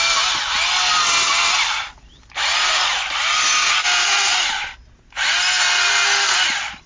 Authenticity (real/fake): real